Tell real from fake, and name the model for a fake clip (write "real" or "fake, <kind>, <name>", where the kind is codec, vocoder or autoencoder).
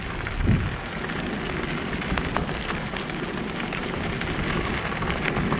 real